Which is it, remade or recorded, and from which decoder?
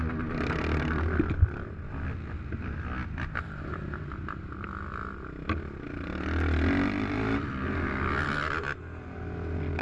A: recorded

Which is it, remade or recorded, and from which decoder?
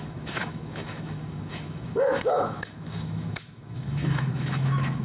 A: remade, autoencoder, DAC-VAE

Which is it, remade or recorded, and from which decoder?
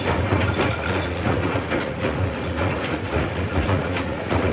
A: remade, vocoder, Vocos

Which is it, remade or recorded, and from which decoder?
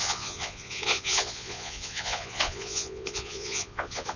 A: remade, vocoder, Vocos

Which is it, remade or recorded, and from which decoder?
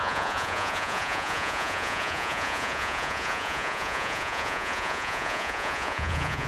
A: remade, vocoder, Vocos